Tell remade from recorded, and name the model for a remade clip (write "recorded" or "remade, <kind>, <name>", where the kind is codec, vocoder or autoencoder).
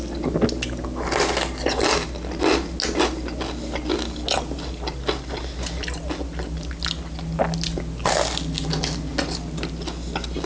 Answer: recorded